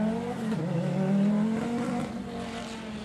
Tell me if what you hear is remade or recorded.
recorded